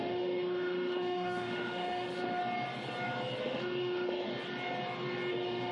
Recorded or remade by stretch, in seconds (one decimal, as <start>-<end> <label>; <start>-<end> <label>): 0.0-2.4 remade; 2.4-3.4 recorded; 3.4-4.3 remade; 4.3-5.3 recorded; 5.3-5.7 remade